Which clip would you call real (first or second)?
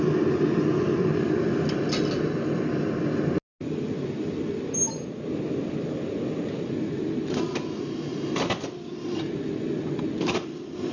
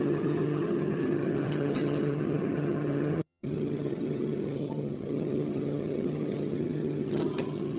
first